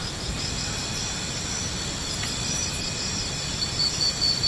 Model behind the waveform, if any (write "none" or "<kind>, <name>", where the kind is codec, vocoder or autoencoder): none